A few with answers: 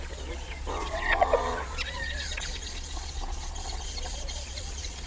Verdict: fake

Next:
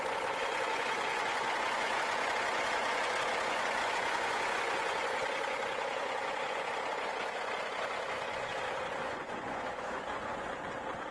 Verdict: fake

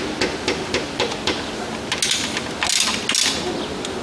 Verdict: real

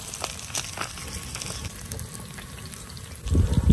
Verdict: real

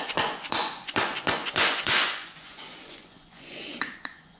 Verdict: fake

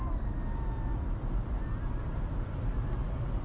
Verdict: real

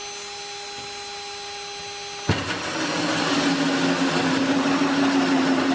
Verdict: real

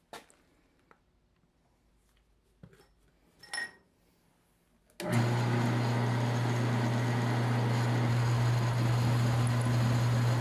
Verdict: real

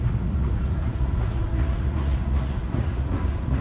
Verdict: fake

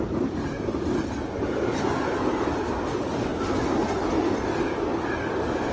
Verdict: real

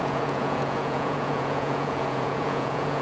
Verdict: fake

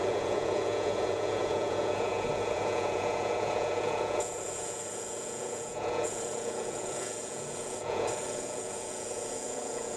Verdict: fake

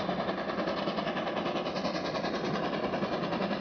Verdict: real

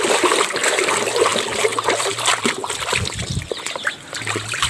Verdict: real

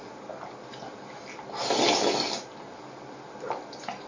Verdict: real